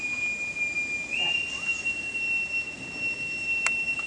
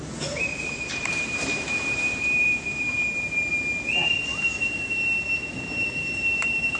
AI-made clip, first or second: second